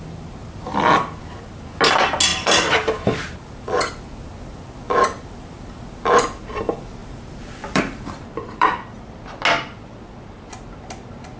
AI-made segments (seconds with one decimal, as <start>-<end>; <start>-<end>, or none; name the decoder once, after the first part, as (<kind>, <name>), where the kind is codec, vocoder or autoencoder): 0.4-1.2 (vocoder, BigVGAN v2); 2.3-2.9; 7.0-9.2